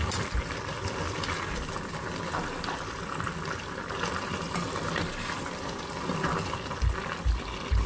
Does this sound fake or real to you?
real